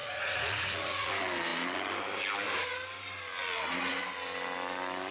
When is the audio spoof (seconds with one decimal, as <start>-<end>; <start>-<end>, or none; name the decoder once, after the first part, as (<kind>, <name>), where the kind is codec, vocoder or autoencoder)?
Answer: 0.0-1.1 (vocoder, Vocos)